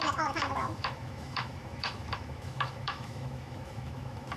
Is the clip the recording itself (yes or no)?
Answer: no